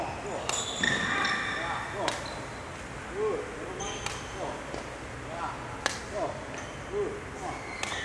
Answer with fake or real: real